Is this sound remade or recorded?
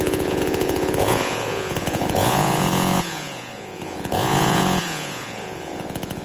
remade